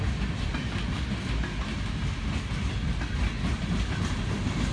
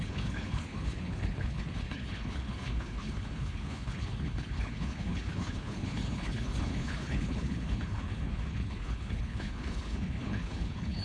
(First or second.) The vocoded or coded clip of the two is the second